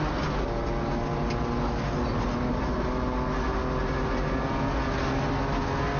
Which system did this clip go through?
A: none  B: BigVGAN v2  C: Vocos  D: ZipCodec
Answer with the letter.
A